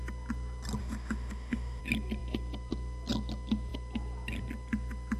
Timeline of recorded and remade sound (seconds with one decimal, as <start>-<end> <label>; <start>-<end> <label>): 0.0-0.8 recorded; 0.8-1.8 remade; 1.8-5.2 recorded